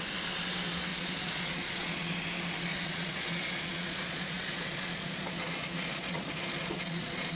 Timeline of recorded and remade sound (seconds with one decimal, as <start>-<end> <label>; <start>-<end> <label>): 0.0-0.9 recorded; 0.9-2.1 remade; 2.1-2.7 recorded; 2.7-7.4 remade